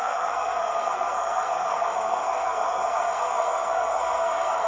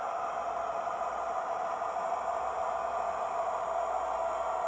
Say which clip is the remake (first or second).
first